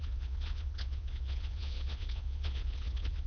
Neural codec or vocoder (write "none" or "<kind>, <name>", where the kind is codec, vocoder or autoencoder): vocoder, Vocos